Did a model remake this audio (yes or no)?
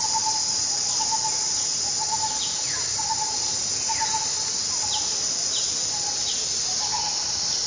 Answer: no